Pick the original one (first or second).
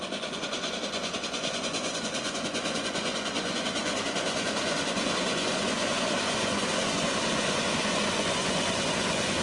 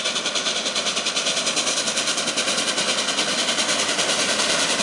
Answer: second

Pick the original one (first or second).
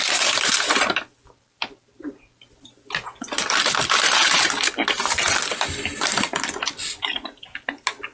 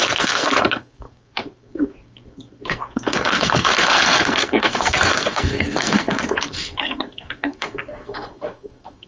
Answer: first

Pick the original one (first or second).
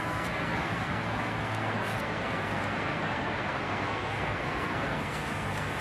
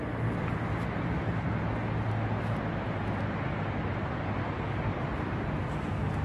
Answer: second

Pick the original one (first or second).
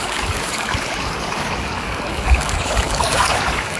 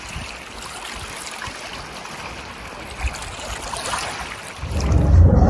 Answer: second